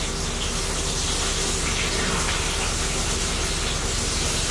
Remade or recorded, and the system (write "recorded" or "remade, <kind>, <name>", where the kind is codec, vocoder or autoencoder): recorded